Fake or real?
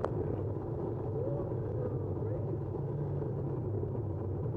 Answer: real